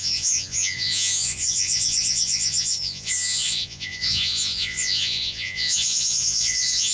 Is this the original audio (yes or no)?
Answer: no